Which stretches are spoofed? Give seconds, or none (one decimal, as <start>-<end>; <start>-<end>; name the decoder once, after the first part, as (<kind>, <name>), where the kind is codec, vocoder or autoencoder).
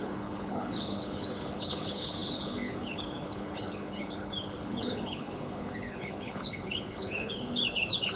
0.0-8.2 (codec, HILCodec)